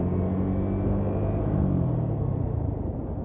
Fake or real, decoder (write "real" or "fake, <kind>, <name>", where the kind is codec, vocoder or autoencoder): real